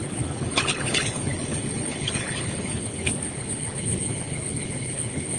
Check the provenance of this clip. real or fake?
fake